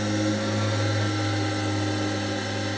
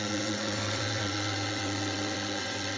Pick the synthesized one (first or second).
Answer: second